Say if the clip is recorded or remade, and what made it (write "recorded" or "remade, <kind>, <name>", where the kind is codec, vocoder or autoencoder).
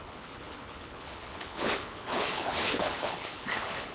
remade, codec, HILCodec